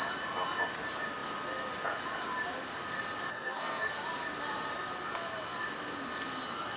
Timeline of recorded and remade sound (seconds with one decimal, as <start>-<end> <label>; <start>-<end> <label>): 0.0-3.3 recorded; 3.3-4.0 remade; 4.0-6.8 recorded